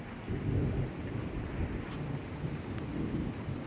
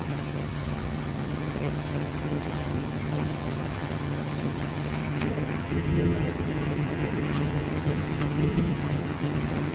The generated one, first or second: second